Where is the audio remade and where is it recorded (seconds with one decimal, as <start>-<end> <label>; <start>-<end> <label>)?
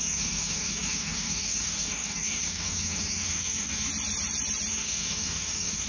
0.0-3.9 remade; 3.9-4.7 recorded; 4.7-5.9 remade